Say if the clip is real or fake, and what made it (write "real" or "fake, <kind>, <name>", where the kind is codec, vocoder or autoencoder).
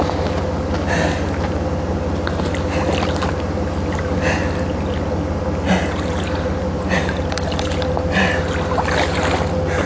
real